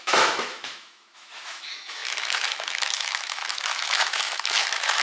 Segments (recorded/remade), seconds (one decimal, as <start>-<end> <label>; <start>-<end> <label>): 0.0-5.0 remade